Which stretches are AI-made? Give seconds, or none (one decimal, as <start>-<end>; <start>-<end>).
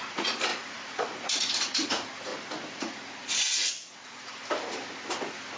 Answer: 0.0-2.3; 2.8-4.4